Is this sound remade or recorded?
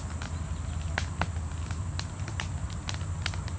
recorded